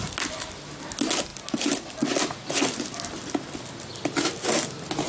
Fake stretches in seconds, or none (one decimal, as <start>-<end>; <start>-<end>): none

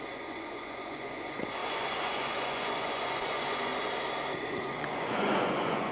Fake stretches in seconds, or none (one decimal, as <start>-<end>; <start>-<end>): 0.0-3.7; 4.4-5.9

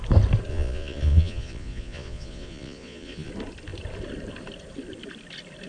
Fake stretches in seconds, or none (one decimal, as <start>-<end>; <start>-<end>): 0.5-3.3

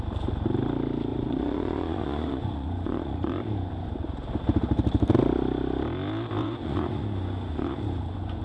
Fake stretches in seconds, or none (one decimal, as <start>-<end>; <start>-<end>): 1.1-3.9; 6.4-8.4

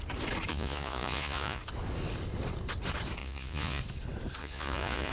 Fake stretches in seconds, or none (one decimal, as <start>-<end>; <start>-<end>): 0.5-1.6; 3.2-3.8; 4.4-5.1

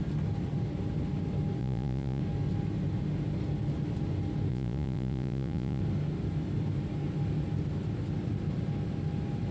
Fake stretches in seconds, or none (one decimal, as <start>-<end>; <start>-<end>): 1.6-2.2; 4.5-5.8

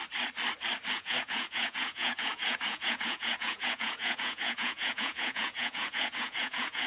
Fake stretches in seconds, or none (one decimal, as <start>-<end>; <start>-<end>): 0.9-6.9

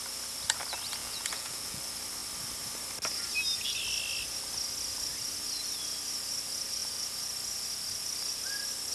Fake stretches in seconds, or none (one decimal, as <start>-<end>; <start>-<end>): 1.0-1.8